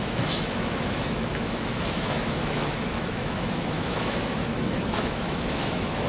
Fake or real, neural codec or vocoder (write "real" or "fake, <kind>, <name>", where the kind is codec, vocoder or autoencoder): fake, autoencoder, DAC-VAE